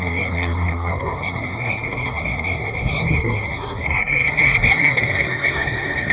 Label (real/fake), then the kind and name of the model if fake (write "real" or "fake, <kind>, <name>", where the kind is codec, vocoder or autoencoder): fake, codec, SNAC